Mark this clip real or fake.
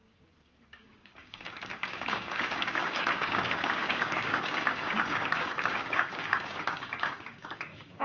fake